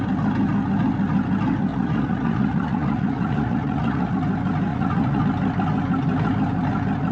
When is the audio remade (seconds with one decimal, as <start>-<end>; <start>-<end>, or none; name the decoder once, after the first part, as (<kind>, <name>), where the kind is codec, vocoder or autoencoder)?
1.7-4.1 (vocoder, Vocos); 4.7-5.2